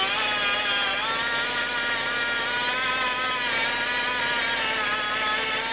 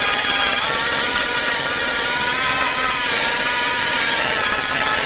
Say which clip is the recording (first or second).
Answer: first